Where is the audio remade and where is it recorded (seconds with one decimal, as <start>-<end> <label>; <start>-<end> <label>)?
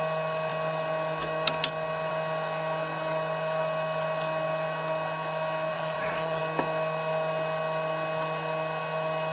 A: 0.0-5.7 recorded; 5.7-6.4 remade; 6.4-9.3 recorded